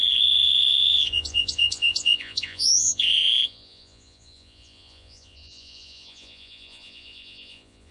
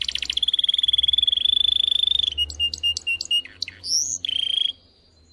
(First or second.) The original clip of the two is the second